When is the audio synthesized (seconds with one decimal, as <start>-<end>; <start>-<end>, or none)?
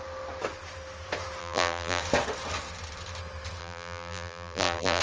1.4-2.0; 3.6-5.0